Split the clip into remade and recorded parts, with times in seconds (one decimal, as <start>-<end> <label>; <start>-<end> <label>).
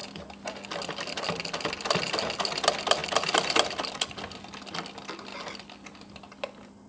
0.0-3.0 recorded; 3.0-4.0 remade; 4.0-6.9 recorded